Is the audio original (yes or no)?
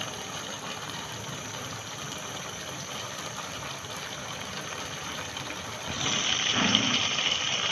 no